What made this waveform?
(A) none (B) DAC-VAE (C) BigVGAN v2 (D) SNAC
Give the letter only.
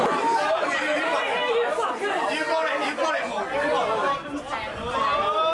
A